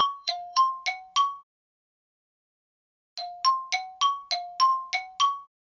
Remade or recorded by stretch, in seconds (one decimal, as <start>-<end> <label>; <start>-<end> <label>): 0.0-0.7 remade; 0.7-5.8 recorded